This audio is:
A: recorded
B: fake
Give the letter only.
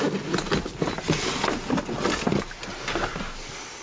A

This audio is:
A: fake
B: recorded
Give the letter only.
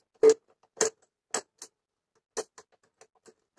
B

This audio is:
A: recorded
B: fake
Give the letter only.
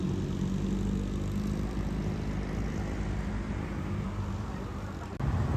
A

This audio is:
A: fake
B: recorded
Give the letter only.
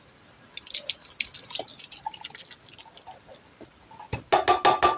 B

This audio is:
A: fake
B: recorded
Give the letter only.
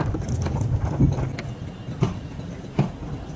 B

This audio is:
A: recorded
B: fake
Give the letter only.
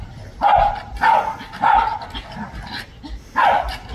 A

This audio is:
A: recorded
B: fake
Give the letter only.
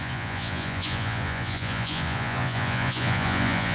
B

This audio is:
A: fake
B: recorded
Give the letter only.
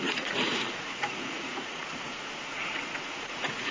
A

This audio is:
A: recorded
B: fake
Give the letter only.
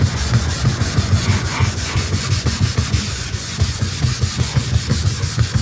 B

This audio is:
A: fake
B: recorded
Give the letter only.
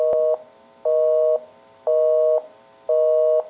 B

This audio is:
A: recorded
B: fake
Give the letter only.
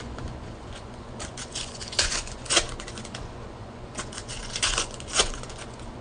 B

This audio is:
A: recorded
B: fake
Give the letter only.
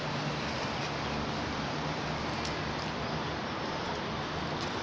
A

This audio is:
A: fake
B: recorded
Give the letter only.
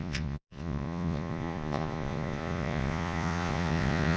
A